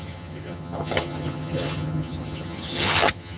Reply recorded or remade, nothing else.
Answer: remade